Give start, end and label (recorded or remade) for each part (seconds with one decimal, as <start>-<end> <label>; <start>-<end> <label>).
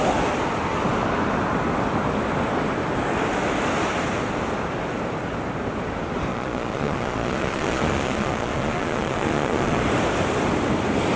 0.0-6.3 recorded; 6.3-9.8 remade; 9.8-11.2 recorded